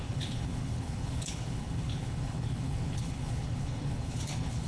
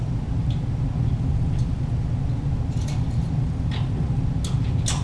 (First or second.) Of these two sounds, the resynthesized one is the first